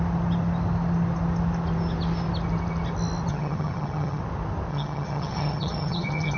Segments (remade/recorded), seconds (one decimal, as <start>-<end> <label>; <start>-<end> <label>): 0.0-3.3 recorded; 3.3-4.2 remade; 4.2-4.7 recorded; 4.7-6.4 remade